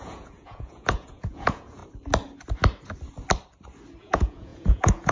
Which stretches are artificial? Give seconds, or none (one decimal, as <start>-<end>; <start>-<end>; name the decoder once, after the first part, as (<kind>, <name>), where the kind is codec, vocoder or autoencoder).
0.0-1.8 (vocoder, Vocos); 4.0-5.1